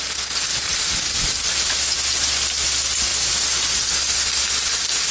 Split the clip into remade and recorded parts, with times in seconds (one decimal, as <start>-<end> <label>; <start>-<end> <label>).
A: 0.0-5.1 recorded